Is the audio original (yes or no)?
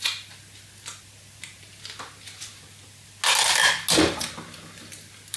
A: yes